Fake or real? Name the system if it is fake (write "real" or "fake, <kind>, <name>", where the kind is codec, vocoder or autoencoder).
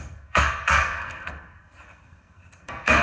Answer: fake, codec, SNAC